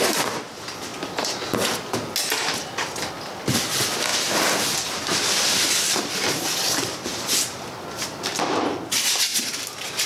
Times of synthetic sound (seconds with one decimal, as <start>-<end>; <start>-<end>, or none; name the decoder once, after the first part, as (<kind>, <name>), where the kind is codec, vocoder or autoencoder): 0.0-0.9 (vocoder, BigVGAN v2); 3.0-7.1; 8.1-9.3